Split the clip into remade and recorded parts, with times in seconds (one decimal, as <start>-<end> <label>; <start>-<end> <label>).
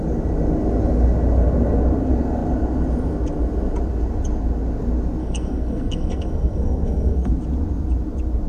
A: 0.0-5.2 recorded; 5.2-7.3 remade; 7.3-8.5 recorded